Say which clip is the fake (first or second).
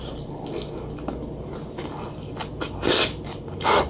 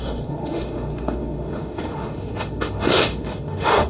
second